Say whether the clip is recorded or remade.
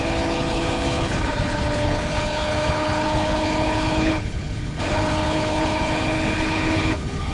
remade